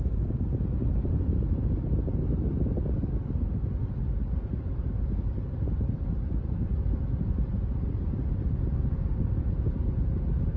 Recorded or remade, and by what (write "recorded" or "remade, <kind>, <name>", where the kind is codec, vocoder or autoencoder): recorded